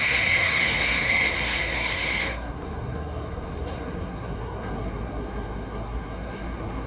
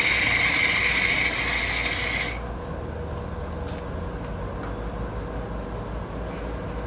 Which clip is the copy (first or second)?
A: first